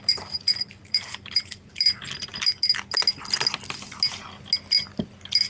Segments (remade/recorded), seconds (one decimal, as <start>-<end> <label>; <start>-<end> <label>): 0.0-1.9 remade; 1.9-5.5 recorded